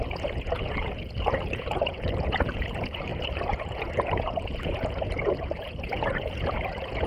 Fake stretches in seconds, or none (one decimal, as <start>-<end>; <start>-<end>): 0.0-7.1